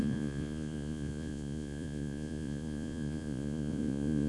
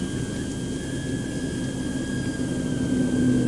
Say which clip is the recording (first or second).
second